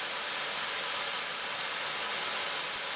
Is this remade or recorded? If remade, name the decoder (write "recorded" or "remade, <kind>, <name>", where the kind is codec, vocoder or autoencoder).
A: recorded